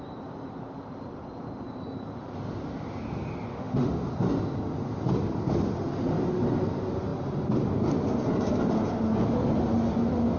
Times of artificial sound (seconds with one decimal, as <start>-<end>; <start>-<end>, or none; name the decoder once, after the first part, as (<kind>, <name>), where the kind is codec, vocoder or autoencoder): 3.5-4.1 (autoencoder, DAC-VAE)